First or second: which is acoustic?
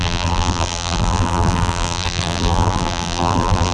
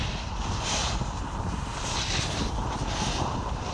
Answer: second